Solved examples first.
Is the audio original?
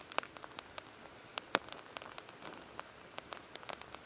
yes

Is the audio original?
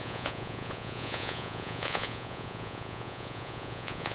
no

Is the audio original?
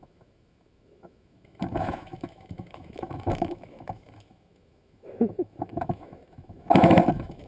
no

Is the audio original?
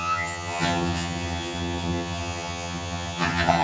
no